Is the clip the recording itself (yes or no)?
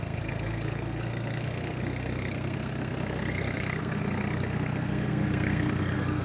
no